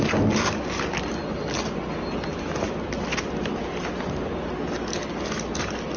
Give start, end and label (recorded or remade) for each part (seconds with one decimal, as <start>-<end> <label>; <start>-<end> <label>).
0.0-6.0 recorded